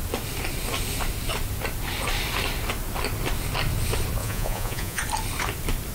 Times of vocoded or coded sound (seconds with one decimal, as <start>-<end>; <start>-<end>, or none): 4.2-5.0